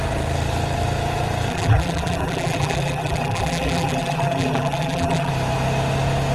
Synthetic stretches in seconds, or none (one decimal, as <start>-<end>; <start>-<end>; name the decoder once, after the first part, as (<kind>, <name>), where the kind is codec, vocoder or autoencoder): 1.5-5.3 (vocoder, BigVGAN v2)